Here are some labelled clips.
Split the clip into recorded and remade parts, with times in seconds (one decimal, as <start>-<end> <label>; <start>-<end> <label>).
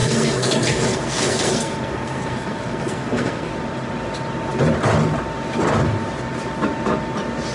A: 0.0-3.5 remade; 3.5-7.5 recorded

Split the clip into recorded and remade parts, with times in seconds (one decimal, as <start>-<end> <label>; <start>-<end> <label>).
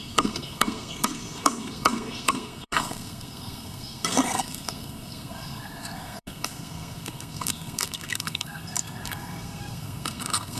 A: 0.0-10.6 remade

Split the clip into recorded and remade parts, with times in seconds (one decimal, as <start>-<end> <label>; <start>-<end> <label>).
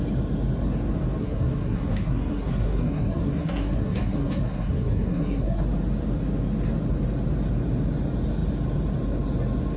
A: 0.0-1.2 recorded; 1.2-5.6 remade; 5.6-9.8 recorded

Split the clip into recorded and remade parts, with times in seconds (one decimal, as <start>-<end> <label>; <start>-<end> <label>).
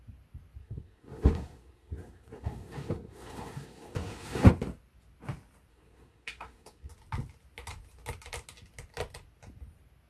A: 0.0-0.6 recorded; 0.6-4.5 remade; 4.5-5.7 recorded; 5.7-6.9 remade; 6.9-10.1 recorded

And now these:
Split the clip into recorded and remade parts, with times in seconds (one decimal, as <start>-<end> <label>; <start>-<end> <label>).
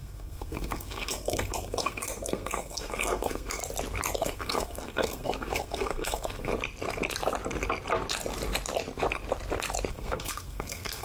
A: 0.0-3.6 remade; 3.6-4.2 recorded; 4.2-6.5 remade; 6.5-9.9 recorded; 9.9-11.0 remade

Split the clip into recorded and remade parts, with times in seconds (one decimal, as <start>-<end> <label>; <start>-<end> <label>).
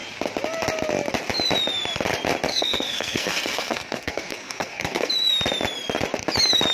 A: 0.0-2.5 recorded; 2.5-5.1 remade; 5.1-6.7 recorded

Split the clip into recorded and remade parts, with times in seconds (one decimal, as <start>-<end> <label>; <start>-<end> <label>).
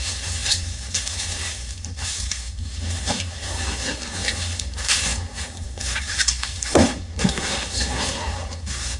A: 0.0-9.0 remade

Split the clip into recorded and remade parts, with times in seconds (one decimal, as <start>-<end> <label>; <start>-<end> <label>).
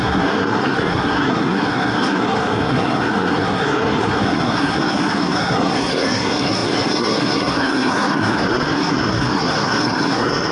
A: 0.0-10.5 remade